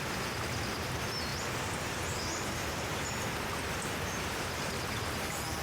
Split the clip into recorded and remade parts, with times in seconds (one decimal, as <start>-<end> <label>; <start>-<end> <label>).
0.0-5.6 recorded